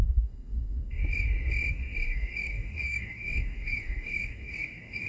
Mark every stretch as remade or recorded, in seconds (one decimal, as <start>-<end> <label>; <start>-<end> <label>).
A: 0.0-1.0 remade; 1.0-1.7 recorded; 1.7-5.1 remade